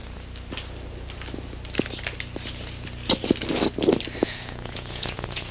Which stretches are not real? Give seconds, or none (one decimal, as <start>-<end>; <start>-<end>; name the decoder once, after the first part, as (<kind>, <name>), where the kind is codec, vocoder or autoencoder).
4.2-5.5 (vocoder, Vocos)